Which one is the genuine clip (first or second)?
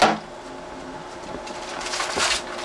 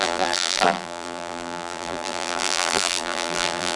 first